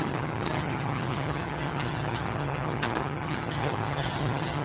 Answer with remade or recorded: remade